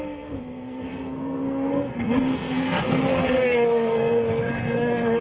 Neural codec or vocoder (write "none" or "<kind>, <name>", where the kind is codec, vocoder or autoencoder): codec, SNAC